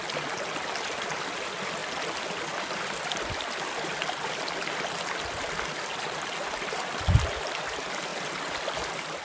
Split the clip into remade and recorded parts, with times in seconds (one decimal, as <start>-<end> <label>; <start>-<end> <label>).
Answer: 0.0-9.2 recorded